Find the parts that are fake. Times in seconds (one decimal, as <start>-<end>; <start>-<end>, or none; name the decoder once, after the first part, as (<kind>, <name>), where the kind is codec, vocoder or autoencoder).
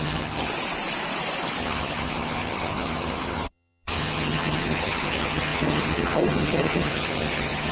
0.0-0.5 (vocoder, HiFi-GAN); 1.6-7.7